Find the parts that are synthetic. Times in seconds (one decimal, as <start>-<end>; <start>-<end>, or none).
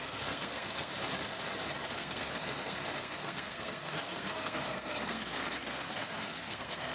0.0-0.9; 1.9-6.9